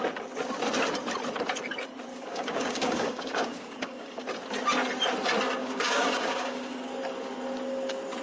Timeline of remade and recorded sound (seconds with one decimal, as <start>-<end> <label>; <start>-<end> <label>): 0.0-2.1 recorded; 2.1-4.2 remade; 4.2-5.6 recorded; 5.6-6.9 remade; 6.9-8.2 recorded